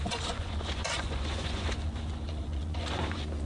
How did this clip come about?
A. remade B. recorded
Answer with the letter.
A